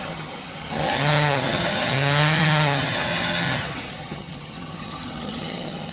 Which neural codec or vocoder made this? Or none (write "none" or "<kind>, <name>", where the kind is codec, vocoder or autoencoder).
vocoder, HiFi-GAN